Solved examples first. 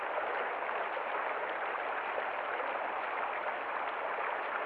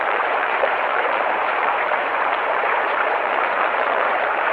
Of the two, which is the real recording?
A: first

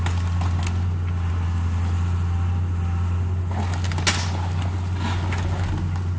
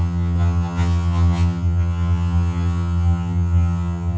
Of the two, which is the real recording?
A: first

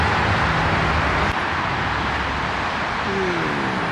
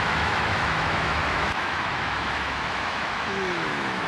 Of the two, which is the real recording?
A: first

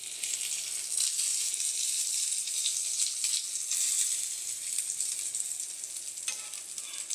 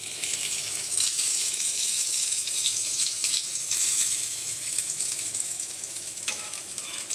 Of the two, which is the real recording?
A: first